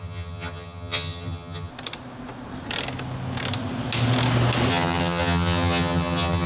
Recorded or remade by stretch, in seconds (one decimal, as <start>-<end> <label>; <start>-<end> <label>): 0.0-1.7 remade; 1.7-4.7 recorded; 4.7-6.5 remade